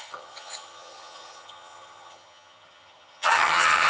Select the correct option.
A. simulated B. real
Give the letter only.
A